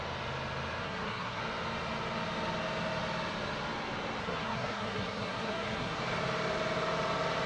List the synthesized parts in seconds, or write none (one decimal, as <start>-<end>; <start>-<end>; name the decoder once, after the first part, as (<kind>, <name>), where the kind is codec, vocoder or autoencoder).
0.8-1.4 (codec, SNAC); 4.2-6.0